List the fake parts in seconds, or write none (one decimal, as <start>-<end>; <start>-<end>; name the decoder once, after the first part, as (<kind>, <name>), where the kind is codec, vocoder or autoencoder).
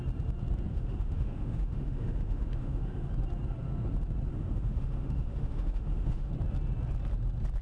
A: 0.7-3.1 (autoencoder, DAC-VAE); 4.3-6.3